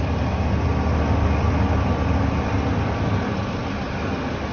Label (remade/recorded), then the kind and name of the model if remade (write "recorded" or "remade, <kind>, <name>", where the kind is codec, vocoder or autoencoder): recorded